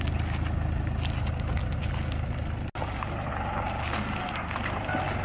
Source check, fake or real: real